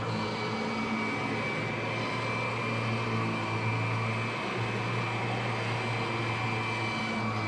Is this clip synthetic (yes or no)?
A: no